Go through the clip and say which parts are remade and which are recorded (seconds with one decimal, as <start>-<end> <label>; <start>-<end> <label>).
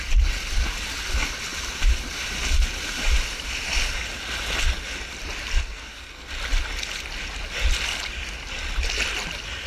0.0-5.6 recorded; 5.6-6.3 remade; 6.3-9.7 recorded